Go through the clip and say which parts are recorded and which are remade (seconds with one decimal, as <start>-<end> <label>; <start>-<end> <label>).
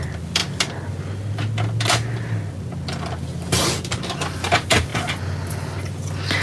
0.0-6.4 recorded